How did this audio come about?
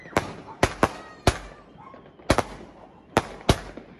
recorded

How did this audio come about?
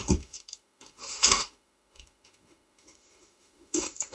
remade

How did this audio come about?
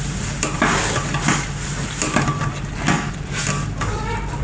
recorded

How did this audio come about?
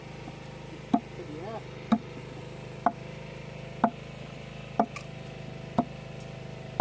recorded